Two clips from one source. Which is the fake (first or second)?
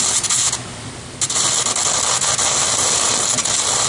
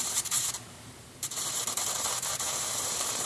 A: second